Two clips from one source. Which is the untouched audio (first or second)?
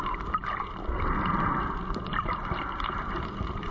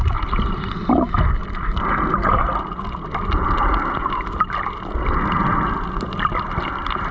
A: second